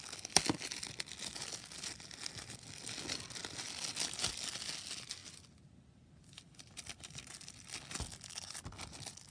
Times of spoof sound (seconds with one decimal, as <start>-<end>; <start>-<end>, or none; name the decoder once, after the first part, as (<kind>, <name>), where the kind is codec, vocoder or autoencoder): none

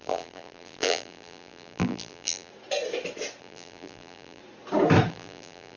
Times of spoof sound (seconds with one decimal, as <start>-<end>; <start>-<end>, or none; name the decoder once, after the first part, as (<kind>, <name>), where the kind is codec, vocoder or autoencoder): 0.0-2.5 (vocoder, BigVGAN v2); 3.4-4.4; 5.1-5.8